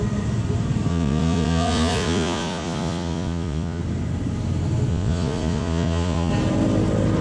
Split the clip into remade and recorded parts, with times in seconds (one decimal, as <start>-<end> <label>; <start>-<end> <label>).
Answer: 0.0-0.9 recorded; 0.9-3.8 remade; 3.8-4.9 recorded; 4.9-6.3 remade; 6.3-7.2 recorded